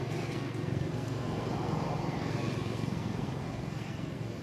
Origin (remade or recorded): remade